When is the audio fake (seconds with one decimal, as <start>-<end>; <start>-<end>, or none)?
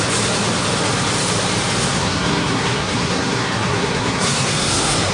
1.9-5.1